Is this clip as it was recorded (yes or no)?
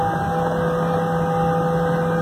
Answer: yes